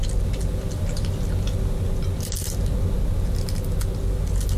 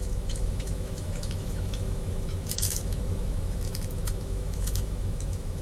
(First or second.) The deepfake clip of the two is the second